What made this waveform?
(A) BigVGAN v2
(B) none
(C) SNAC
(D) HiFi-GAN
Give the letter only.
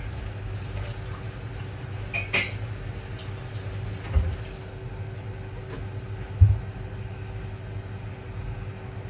B